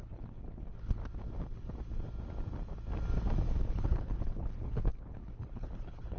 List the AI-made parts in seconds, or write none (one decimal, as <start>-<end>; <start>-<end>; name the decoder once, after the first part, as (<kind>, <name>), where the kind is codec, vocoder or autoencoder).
0.0-1.0 (codec, HILCodec); 3.7-6.2